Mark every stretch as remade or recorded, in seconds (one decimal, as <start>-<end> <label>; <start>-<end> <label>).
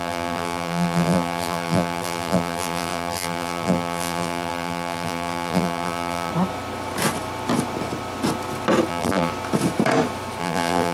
0.0-6.3 remade; 6.3-8.9 recorded; 8.9-9.3 remade; 9.3-10.4 recorded; 10.4-10.9 remade